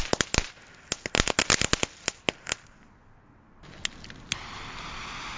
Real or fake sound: real